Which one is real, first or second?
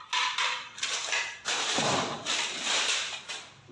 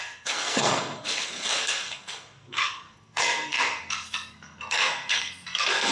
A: first